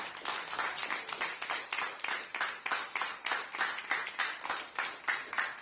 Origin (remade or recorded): recorded